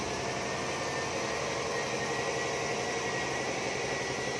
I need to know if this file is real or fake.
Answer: real